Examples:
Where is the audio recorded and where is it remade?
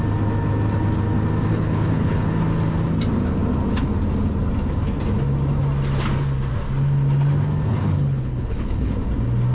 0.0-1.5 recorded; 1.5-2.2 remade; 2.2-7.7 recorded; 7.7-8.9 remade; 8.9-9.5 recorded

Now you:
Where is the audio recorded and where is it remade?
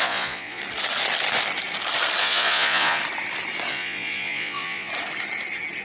0.0-0.6 remade; 0.6-2.2 recorded; 2.2-3.0 remade; 3.0-3.7 recorded; 3.7-4.9 remade; 4.9-5.8 recorded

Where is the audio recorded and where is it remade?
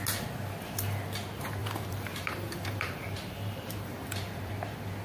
0.0-1.6 recorded; 1.6-4.5 remade; 4.5-5.0 recorded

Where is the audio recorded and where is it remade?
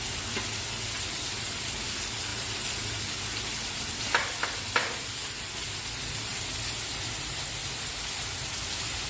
0.0-9.1 recorded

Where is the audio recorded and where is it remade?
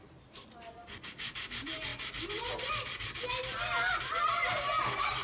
0.0-5.2 recorded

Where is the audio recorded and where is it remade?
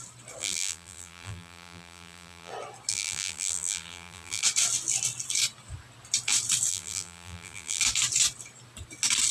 0.0-0.4 recorded; 0.4-2.5 remade; 2.5-2.9 recorded; 2.9-4.4 remade; 4.4-6.7 recorded; 6.7-7.8 remade; 7.8-9.3 recorded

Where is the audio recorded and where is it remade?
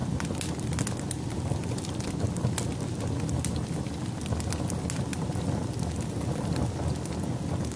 0.0-7.8 recorded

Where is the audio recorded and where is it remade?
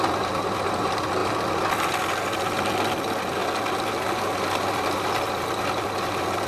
0.0-6.5 recorded